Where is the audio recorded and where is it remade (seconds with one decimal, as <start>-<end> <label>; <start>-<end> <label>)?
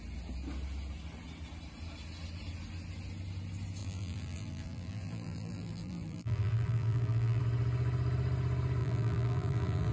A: 0.0-3.8 recorded; 3.8-7.4 remade; 7.4-8.8 recorded; 8.8-9.9 remade